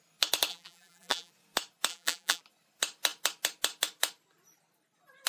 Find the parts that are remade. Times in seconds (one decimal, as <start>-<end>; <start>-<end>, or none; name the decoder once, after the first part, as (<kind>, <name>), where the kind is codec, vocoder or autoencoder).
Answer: 0.5-1.3 (vocoder, BigVGAN v2); 1.9-2.4

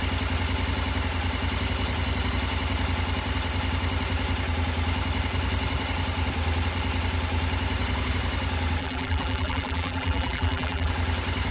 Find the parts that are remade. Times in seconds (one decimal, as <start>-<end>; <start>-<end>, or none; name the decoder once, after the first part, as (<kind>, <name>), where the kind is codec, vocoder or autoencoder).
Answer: 8.8-10.9 (vocoder, BigVGAN v2)

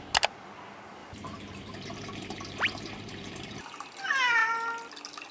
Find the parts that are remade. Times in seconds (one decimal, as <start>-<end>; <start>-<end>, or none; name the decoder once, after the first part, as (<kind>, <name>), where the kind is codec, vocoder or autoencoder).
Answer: 1.0-3.9 (vocoder, BigVGAN v2)

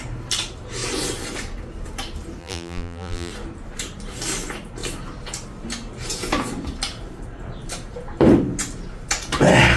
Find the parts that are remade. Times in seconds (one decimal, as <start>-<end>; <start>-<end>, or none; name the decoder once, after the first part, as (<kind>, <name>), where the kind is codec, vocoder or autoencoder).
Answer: 2.4-3.3 (vocoder, BigVGAN v2)